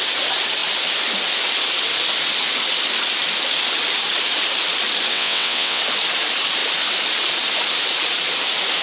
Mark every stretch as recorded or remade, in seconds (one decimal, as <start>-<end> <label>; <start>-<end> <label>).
0.0-5.1 recorded; 5.1-5.8 remade; 5.8-8.8 recorded